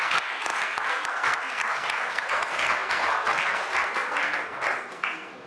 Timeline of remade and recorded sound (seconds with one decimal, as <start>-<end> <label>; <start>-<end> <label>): 0.0-5.5 remade